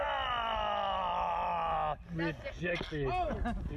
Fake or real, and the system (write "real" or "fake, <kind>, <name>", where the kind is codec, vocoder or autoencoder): real